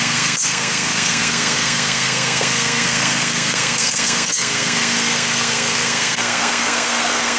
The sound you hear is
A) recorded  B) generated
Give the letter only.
B